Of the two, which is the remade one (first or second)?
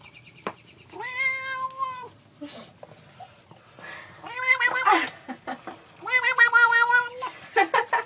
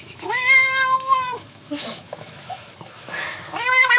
second